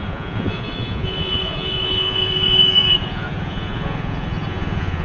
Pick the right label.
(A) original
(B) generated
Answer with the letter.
B